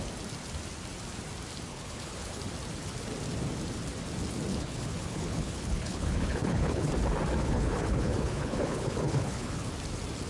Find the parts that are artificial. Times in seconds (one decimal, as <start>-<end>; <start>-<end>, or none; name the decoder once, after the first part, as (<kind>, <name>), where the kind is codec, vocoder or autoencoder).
1.7-2.4 (codec, HILCodec); 4.5-6.9; 7.4-9.7